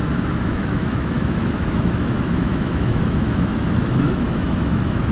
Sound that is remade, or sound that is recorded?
remade